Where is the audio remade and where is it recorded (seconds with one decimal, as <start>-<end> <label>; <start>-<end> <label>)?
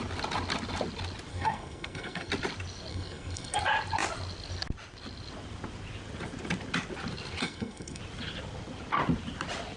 0.0-1.3 recorded; 1.3-2.3 remade; 2.3-2.9 recorded; 2.9-3.6 remade; 3.6-7.4 recorded; 7.4-8.0 remade; 8.0-9.8 recorded